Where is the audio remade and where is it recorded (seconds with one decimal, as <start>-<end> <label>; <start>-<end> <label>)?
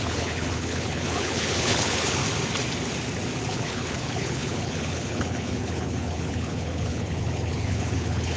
0.0-2.2 remade; 2.2-3.5 recorded; 3.5-8.4 remade